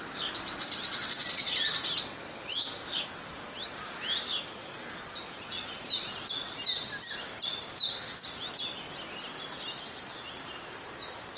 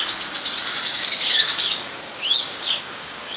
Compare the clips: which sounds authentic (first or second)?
first